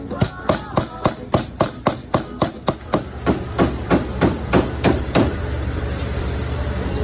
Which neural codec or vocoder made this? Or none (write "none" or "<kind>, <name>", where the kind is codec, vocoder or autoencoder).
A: vocoder, BigVGAN v2